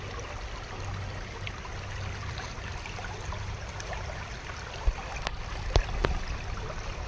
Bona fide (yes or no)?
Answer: yes